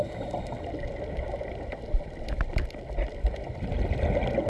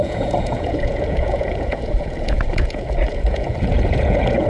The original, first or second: first